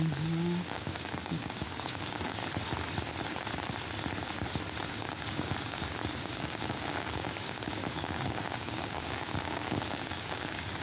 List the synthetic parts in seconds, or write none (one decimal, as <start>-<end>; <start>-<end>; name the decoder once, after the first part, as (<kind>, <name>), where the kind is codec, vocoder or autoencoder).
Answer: 0.0-2.4 (codec, DAC); 4.9-10.8